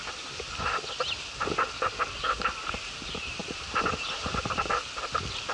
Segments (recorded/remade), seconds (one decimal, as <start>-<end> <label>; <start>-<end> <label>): 0.0-3.4 recorded; 3.4-5.0 remade; 5.0-5.5 recorded